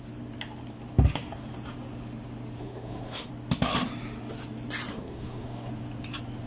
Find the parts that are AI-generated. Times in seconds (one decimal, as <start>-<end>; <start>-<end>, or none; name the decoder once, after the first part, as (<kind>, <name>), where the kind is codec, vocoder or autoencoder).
2.6-3.3 (codec, SNAC); 4.9-5.7